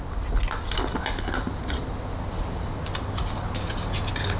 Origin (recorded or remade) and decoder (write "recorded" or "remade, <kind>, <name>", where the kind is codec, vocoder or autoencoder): recorded